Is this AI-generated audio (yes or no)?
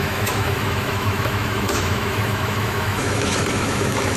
yes